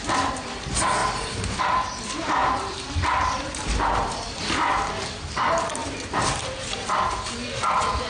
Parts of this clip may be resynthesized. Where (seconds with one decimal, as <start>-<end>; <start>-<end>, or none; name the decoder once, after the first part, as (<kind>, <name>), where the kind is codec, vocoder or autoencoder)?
1.0-1.6 (vocoder, BigVGAN v2); 2.4-4.4; 5.8-6.9